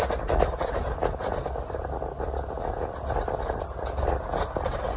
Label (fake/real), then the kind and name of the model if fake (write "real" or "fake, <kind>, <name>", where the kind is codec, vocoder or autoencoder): real